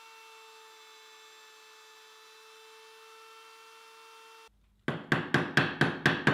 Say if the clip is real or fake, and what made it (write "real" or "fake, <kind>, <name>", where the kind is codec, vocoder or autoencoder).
real